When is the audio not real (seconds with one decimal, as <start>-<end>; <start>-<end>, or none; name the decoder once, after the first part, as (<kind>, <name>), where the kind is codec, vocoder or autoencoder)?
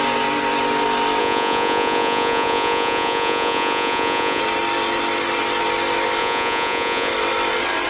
1.2-4.4 (vocoder, Vocos); 6.2-7.1